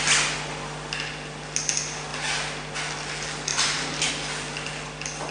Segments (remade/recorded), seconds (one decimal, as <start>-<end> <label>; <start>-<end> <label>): 0.0-3.5 recorded; 3.5-4.1 remade; 4.1-5.3 recorded